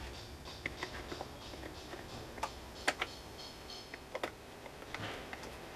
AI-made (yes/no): no